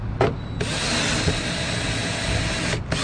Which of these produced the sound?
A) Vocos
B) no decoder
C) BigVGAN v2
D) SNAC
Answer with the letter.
B